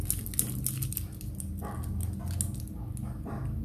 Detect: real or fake real